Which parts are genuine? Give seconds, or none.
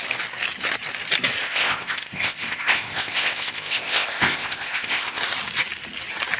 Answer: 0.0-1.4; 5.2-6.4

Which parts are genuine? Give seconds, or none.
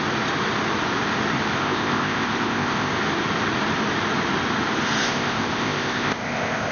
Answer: 0.0-1.6; 2.9-5.0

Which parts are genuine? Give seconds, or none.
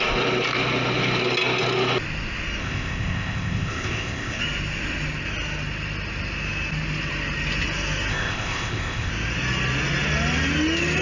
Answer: 0.0-2.6; 4.4-8.1; 9.1-11.0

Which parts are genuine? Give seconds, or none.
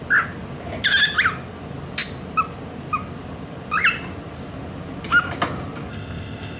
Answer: 0.0-5.9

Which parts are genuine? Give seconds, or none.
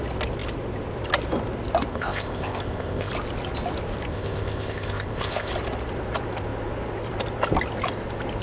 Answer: 0.0-1.9; 3.1-4.1; 5.5-8.4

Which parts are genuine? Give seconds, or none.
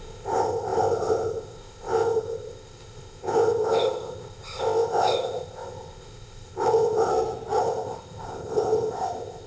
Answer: 7.1-7.6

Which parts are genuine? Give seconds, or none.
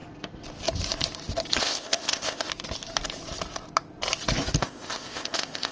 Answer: 0.0-1.6; 2.5-4.6